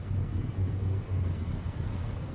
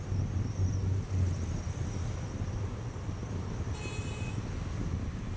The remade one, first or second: first